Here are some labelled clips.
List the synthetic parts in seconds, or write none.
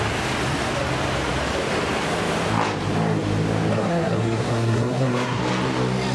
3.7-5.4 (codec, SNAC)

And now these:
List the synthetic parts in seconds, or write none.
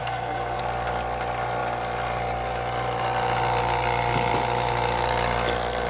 0.0-0.6 (codec, SNAC)